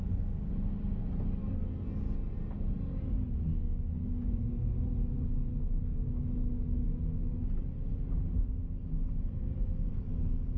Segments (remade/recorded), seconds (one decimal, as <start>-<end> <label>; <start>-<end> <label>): 0.0-10.6 recorded